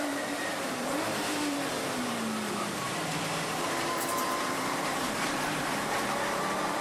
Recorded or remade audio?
remade